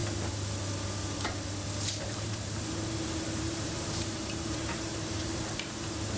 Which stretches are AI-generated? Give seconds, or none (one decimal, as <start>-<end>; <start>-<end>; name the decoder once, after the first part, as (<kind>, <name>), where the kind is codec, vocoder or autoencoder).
2.0-6.2 (vocoder, BigVGAN v2)